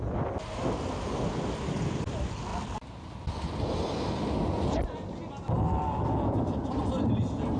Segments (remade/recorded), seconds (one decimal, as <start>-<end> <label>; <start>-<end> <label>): 0.0-7.6 recorded